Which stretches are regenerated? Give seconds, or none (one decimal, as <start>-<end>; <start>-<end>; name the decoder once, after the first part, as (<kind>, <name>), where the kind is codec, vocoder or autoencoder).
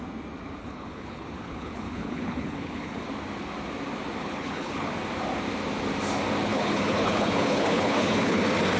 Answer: 0.6-3.0 (codec, HILCodec); 4.2-4.9; 6.5-8.4